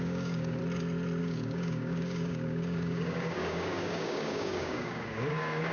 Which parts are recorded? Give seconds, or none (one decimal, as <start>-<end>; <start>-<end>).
0.6-1.2

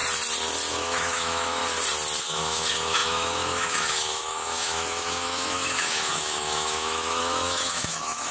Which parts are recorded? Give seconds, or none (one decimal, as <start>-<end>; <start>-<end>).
0.0-0.7; 1.6-2.2

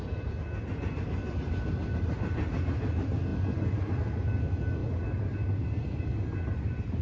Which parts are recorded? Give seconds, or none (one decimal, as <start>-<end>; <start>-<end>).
0.0-7.0